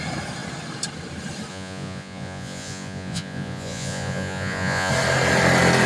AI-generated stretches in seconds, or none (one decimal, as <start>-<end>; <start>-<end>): 1.5-4.9